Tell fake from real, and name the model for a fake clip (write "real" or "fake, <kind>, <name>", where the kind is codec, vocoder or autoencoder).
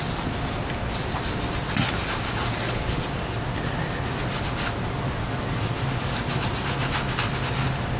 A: real